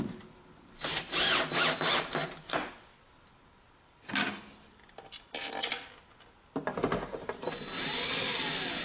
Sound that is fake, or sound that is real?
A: real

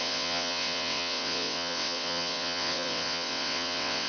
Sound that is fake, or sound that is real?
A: fake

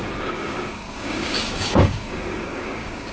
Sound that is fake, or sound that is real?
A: fake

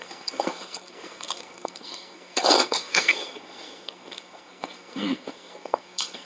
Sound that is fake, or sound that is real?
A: fake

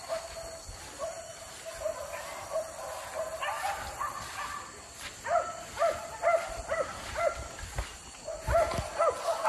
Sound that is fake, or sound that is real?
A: real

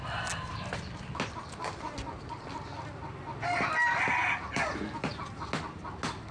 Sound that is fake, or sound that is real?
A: real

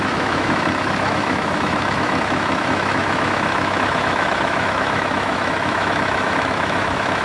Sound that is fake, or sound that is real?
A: fake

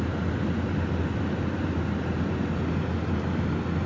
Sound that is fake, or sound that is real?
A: real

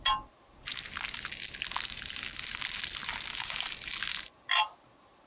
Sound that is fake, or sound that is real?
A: real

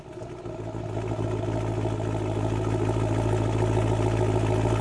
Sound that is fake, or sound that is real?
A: real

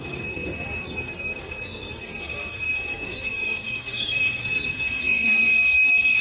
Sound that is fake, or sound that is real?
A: fake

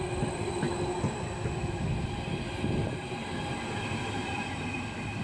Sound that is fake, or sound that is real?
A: real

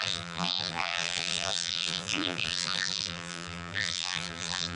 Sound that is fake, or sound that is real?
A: fake